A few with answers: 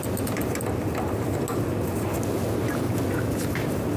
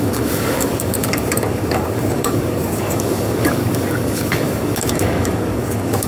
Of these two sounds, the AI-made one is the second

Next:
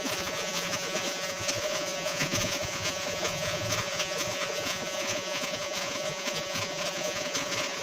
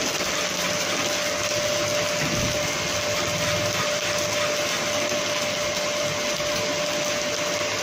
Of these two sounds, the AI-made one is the first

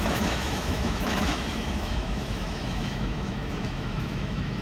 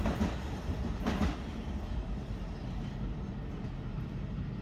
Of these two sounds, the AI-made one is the first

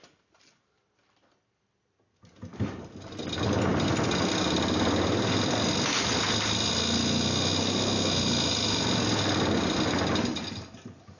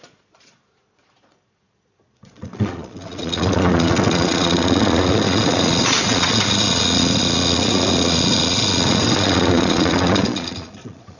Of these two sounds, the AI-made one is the second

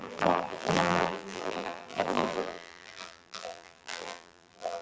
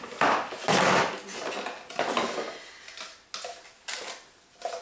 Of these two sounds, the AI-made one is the first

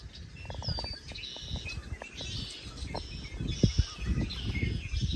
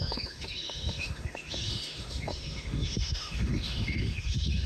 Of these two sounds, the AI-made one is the second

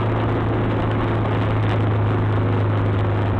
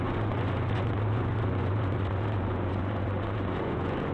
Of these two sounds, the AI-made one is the second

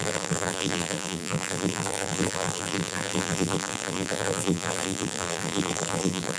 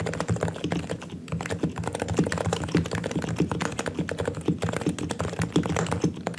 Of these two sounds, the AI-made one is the first